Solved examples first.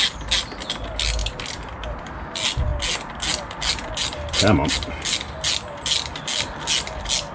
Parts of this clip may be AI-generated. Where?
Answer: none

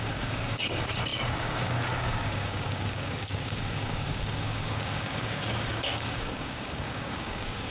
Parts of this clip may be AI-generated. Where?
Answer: 0.0-7.7 (codec, DAC)